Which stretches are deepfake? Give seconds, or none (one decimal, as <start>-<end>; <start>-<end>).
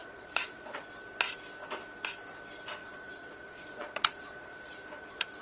0.0-0.8; 2.8-5.4